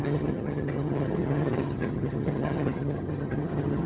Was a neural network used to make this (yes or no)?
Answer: yes